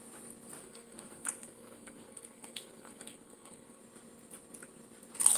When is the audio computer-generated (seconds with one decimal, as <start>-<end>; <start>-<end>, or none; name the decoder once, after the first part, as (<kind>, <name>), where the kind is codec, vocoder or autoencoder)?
0.6-3.8 (codec, SNAC)